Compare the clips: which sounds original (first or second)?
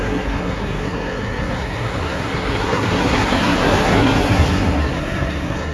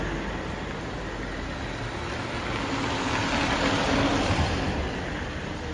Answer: second